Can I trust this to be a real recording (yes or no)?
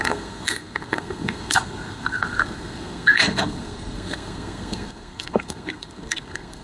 no